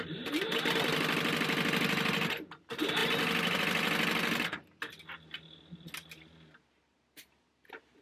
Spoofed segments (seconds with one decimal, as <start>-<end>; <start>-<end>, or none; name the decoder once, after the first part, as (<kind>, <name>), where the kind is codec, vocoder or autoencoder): none